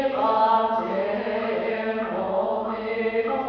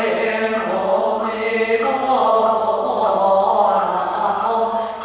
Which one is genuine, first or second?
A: second